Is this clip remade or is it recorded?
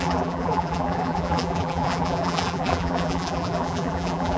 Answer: remade